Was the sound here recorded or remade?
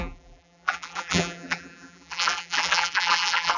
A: remade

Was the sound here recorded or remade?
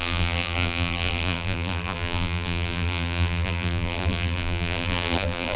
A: remade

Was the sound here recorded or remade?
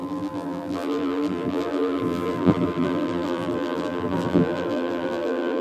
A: remade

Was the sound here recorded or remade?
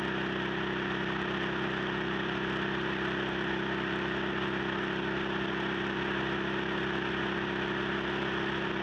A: recorded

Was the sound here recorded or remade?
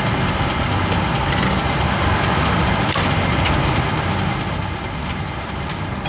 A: recorded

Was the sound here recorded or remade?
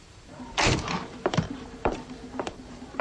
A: remade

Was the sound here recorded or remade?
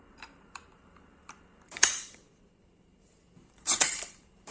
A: remade